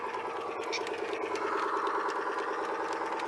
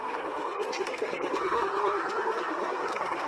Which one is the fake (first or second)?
second